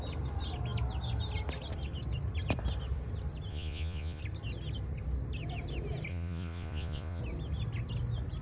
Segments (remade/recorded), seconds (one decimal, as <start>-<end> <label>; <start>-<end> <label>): 0.0-3.5 recorded; 3.5-4.2 remade; 4.2-6.1 recorded; 6.1-7.2 remade; 7.2-8.4 recorded